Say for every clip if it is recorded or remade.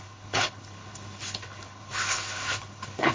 remade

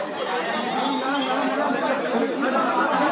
remade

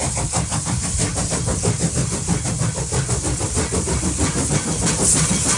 recorded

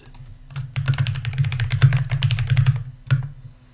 recorded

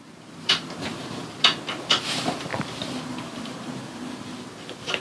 recorded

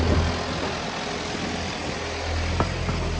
recorded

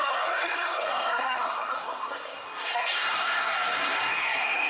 remade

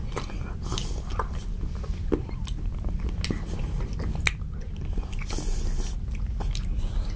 recorded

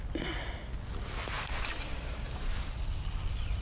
recorded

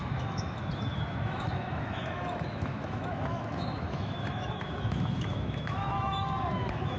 remade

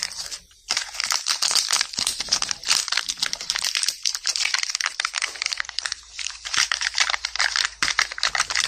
remade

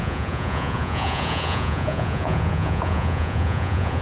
remade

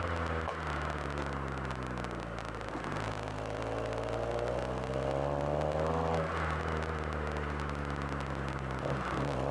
recorded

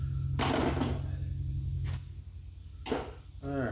recorded